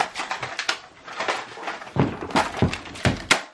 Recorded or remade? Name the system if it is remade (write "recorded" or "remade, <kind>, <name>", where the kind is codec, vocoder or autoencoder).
recorded